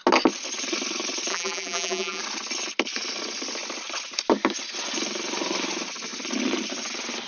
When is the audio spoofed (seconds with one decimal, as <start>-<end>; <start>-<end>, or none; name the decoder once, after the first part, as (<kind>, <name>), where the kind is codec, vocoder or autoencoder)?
1.3-2.2 (vocoder, BigVGAN v2)